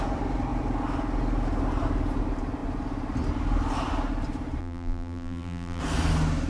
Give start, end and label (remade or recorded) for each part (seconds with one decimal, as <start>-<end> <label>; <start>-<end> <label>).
0.0-4.6 recorded; 4.6-5.8 remade; 5.8-6.5 recorded